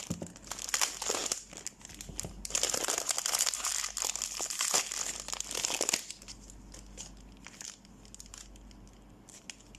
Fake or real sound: real